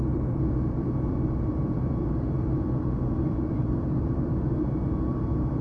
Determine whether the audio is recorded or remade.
remade